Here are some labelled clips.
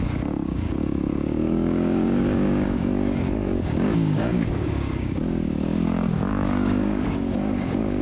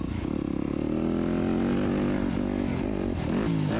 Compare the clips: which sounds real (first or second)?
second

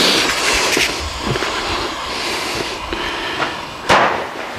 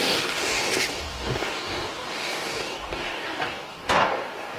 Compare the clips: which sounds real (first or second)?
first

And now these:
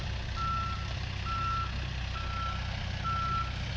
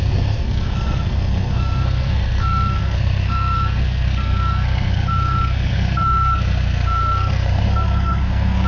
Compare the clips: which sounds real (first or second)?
first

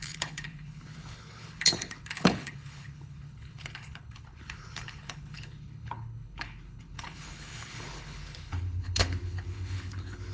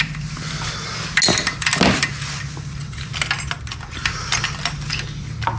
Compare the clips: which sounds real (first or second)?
second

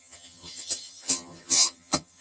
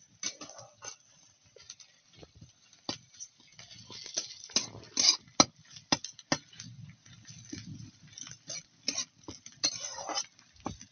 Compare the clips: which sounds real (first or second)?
second